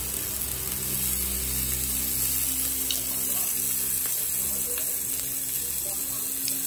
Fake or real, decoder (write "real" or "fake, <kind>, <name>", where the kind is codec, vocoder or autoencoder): real